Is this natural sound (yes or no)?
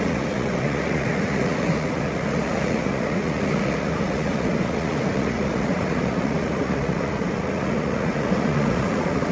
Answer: no